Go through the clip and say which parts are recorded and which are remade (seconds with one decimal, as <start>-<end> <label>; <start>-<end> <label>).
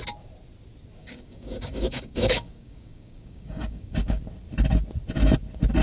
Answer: 0.0-1.0 recorded; 1.0-4.2 remade; 4.2-5.8 recorded